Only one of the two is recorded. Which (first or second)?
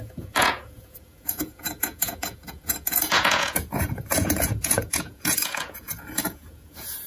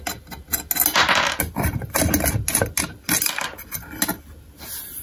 second